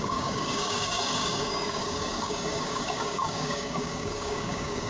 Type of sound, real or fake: fake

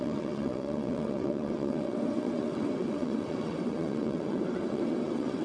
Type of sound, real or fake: fake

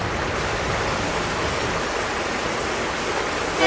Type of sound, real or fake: real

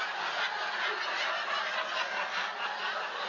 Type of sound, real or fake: real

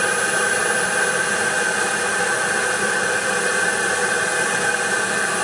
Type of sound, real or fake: real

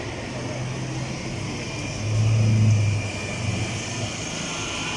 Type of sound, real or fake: real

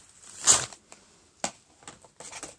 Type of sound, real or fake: real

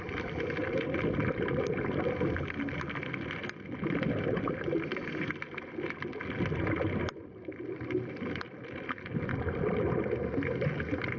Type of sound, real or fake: real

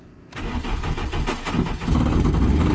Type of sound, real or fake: real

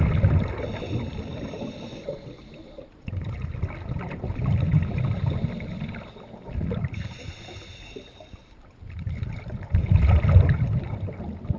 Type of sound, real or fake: real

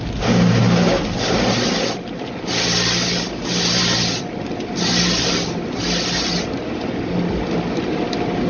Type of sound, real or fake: real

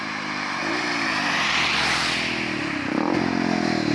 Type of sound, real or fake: real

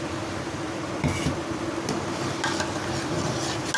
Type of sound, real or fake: real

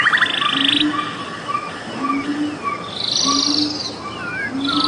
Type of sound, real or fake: real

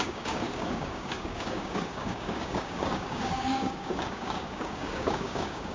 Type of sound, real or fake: fake